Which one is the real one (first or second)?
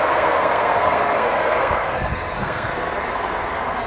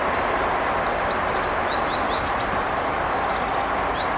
second